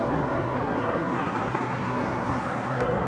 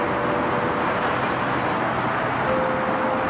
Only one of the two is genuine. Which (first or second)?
second